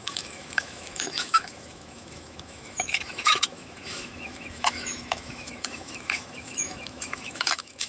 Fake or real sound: fake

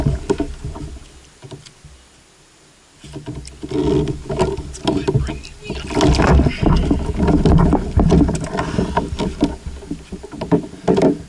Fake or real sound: real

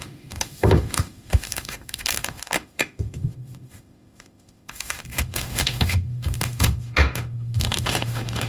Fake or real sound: fake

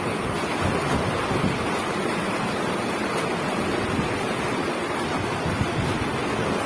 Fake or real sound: real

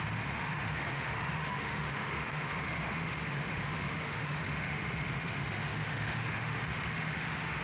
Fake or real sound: fake